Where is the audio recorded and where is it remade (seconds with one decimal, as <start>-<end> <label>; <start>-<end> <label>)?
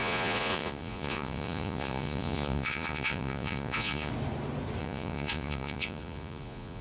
0.0-4.1 remade; 4.1-4.8 recorded; 4.8-6.8 remade